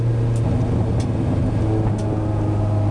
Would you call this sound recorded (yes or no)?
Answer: yes